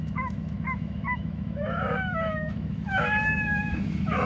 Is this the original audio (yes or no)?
no